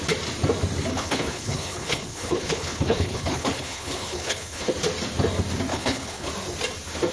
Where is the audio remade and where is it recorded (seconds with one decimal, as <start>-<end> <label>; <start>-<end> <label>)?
0.0-0.9 recorded; 0.9-4.7 remade; 4.7-5.7 recorded; 5.7-6.3 remade; 6.3-7.1 recorded